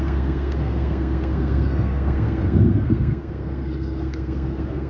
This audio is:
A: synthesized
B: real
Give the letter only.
A